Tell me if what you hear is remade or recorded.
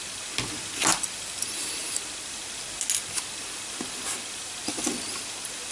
recorded